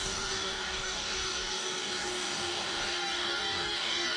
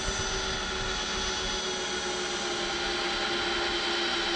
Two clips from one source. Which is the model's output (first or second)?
first